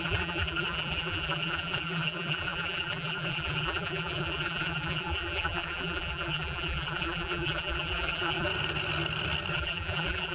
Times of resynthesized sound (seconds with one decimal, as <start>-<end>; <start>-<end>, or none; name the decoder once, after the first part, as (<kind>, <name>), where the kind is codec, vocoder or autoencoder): 0.0-8.5 (vocoder, BigVGAN v2); 9.5-10.3